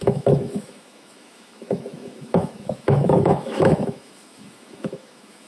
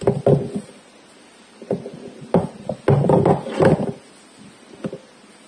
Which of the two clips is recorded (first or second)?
second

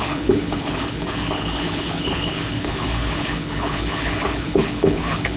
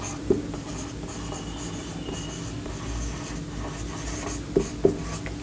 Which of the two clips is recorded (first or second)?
second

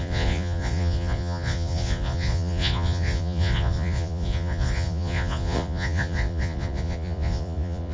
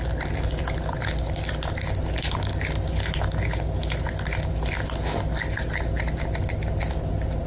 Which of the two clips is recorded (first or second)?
second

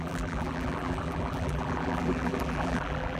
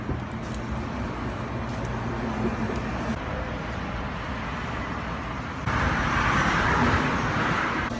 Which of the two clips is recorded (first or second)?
second